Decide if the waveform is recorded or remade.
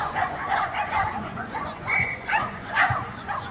remade